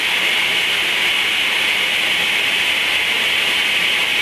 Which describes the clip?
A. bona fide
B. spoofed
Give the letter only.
A